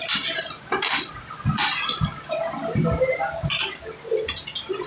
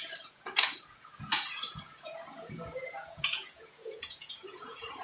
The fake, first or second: second